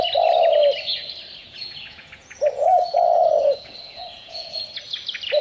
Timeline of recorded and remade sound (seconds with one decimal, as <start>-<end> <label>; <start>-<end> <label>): 0.0-1.4 recorded; 1.4-4.6 remade; 4.6-5.4 recorded

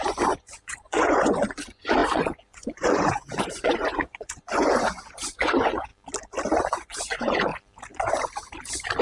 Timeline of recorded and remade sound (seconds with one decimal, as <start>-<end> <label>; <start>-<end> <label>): 0.0-5.9 remade; 5.9-6.7 recorded; 6.7-7.5 remade; 7.5-9.0 recorded

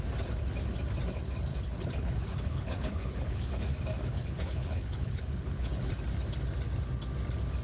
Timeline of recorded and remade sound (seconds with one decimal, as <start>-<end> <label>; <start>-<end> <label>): 0.0-1.5 recorded; 1.5-3.6 remade; 3.6-4.0 recorded; 4.0-5.9 remade; 5.9-7.6 recorded